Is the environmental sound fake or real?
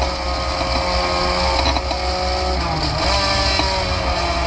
real